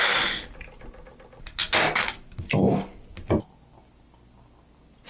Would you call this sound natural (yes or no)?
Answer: yes